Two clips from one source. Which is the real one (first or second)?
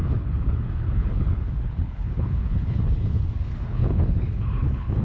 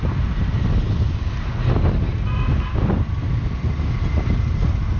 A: second